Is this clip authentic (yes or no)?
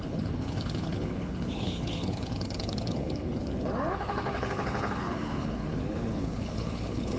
no